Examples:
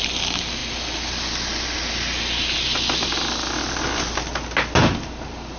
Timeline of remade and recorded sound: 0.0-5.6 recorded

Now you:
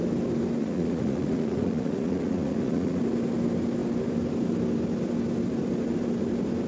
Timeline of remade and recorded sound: 0.0-0.6 recorded; 0.6-3.0 remade; 3.0-6.7 recorded

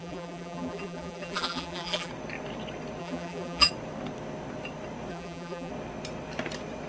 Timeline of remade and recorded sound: 0.0-2.1 remade; 2.1-3.0 recorded; 3.0-3.7 remade; 3.7-5.1 recorded; 5.1-5.7 remade; 5.7-6.9 recorded

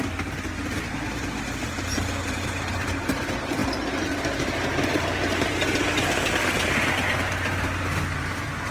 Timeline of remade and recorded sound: 0.0-8.7 recorded

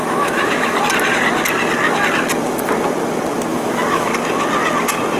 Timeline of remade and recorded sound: 0.0-0.8 remade; 0.8-3.5 recorded; 3.5-4.1 remade; 4.1-5.2 recorded

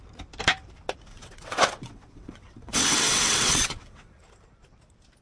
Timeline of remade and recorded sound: 0.0-1.1 recorded; 1.1-4.2 remade; 4.2-5.2 recorded

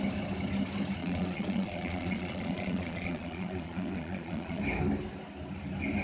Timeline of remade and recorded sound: 0.0-1.0 recorded; 1.0-4.6 remade; 4.6-6.0 recorded

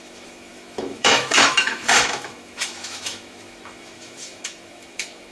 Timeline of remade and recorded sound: 0.0-5.3 remade